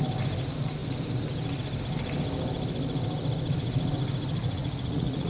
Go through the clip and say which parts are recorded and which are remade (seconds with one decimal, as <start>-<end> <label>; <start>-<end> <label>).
0.0-4.4 recorded; 4.4-5.3 remade